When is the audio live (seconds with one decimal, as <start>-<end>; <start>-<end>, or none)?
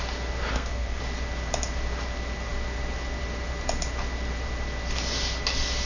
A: 0.0-0.5; 1.0-5.8